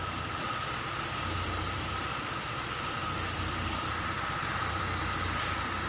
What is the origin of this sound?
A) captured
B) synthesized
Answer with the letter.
B